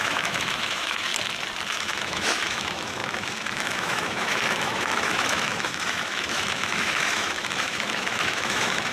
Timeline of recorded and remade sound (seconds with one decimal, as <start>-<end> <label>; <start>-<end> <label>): 0.0-1.1 remade; 1.1-1.7 recorded; 1.7-8.9 remade